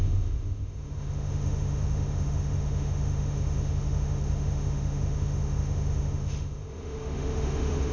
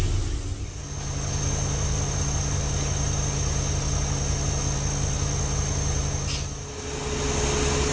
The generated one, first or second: first